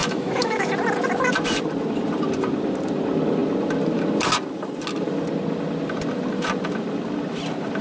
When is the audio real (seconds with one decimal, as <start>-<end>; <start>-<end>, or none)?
0.7-7.8